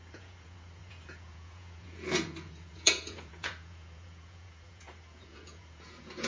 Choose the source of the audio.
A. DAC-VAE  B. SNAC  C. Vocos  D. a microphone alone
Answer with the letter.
C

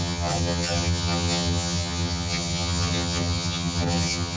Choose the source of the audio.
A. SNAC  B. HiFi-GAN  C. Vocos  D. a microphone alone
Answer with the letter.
B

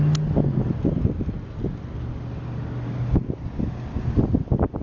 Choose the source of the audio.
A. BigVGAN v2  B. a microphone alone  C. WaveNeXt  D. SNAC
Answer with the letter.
B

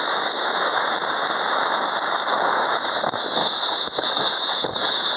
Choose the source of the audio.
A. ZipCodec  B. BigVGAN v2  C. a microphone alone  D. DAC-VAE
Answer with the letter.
D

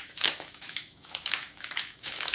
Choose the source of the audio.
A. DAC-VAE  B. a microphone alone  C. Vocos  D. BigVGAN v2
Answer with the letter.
A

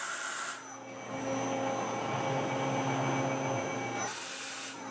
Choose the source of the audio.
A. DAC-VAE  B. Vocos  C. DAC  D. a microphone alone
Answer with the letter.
D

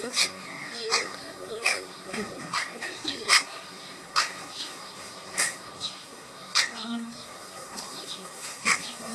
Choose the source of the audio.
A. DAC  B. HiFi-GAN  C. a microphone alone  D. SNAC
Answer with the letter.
D